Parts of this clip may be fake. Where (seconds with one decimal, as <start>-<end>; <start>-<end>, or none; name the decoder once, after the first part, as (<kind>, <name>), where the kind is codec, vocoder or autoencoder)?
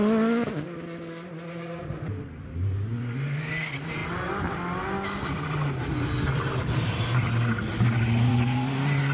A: none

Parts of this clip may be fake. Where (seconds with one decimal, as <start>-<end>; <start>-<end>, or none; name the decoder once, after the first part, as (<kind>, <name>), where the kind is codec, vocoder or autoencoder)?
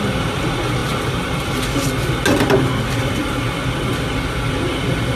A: none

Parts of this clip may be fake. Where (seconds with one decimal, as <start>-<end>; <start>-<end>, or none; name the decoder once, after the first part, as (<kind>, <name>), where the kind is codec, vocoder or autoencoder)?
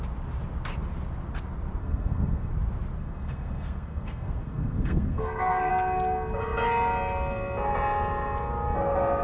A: 1.8-2.5 (codec, SNAC); 3.0-5.7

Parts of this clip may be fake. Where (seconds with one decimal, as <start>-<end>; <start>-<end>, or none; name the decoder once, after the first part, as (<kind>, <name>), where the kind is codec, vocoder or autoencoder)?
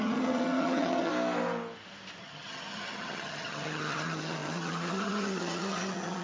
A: 0.0-1.1 (vocoder, HiFi-GAN); 2.2-6.2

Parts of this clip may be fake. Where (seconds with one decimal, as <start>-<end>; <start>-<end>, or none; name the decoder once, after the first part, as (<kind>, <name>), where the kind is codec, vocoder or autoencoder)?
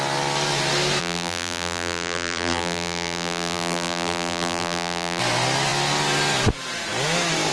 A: 1.0-5.2 (vocoder, BigVGAN v2)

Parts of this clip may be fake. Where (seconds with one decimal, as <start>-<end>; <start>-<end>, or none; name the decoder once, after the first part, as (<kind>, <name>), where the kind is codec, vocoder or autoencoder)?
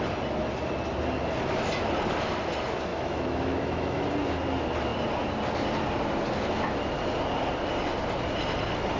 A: 2.9-4.1 (autoencoder, DAC-VAE)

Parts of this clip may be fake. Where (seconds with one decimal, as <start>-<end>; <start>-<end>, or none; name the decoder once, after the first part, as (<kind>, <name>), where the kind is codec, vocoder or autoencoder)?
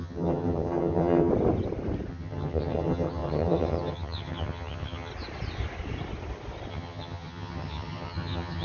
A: 0.0-1.3 (vocoder, HiFi-GAN); 2.1-5.1; 6.7-8.6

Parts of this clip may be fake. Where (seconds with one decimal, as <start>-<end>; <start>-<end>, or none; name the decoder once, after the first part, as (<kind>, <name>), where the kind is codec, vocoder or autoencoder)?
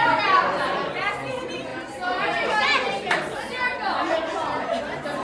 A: none